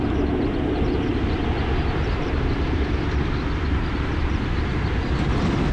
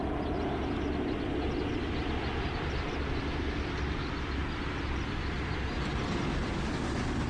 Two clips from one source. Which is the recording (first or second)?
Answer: second